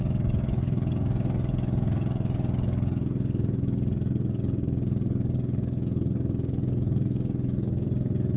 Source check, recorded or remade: remade